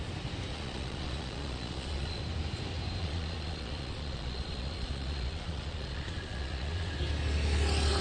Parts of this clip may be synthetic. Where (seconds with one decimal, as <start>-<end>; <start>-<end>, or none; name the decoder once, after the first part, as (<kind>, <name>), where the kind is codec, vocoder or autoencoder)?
0.5-2.2 (vocoder, Vocos); 3.0-6.9